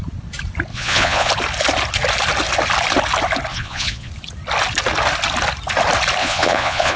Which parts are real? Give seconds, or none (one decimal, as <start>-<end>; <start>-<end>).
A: 0.0-0.7; 1.3-3.5; 4.1-6.2